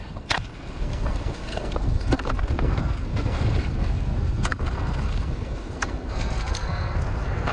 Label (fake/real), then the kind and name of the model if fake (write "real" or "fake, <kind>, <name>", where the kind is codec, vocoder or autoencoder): fake, codec, SNAC